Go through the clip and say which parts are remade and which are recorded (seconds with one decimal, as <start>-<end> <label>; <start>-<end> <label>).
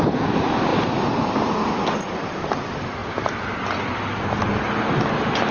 0.0-5.5 recorded